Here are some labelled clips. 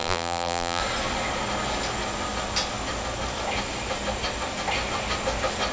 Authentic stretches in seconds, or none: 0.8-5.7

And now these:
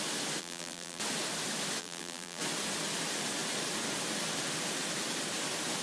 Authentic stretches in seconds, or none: 0.0-0.4; 1.0-1.8; 2.4-5.8

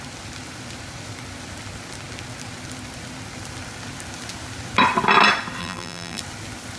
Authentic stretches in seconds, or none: 0.0-5.6; 6.2-6.8

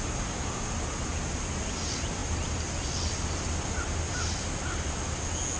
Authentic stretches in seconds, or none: 0.0-2.2; 3.8-5.6

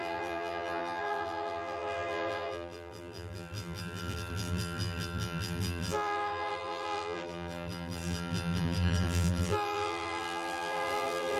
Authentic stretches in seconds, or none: none

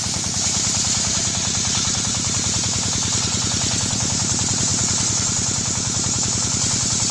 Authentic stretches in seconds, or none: none